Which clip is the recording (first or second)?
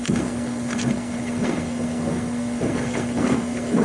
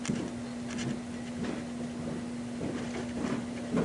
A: second